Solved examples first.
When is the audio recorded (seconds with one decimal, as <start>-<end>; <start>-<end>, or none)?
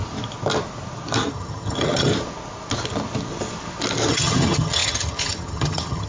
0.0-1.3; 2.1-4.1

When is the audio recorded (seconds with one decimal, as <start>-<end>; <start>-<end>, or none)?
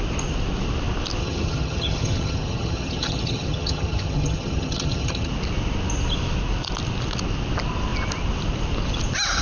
0.0-1.2; 5.3-9.4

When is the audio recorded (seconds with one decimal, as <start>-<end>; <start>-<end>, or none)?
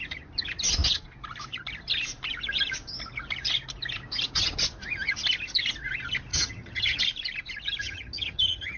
0.0-6.3; 7.0-7.8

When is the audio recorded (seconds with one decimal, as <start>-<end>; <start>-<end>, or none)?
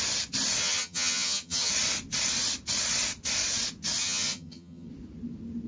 0.0-0.6; 1.7-4.0; 4.9-5.7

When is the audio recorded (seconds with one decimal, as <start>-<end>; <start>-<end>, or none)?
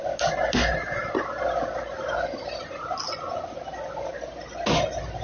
0.0-5.2